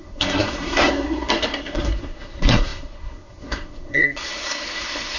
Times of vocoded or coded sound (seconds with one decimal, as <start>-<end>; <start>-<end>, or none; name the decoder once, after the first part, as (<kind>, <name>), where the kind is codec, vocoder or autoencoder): 0.0-5.2 (codec, SNAC)